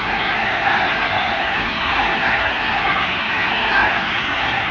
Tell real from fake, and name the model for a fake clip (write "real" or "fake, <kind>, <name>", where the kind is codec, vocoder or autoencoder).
fake, codec, SNAC